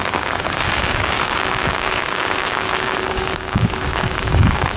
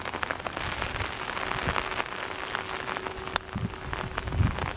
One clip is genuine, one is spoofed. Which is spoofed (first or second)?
first